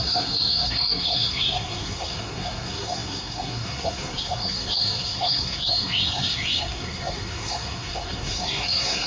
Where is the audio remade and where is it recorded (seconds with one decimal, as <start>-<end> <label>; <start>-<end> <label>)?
0.0-9.1 remade